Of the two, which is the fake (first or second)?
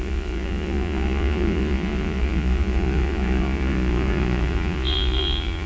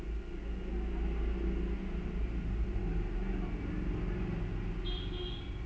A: first